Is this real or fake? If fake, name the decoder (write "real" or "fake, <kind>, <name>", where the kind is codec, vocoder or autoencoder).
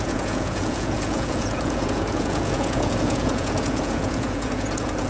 fake, vocoder, Vocos